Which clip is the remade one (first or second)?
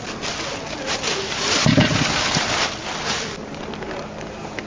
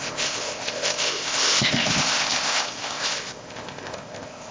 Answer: second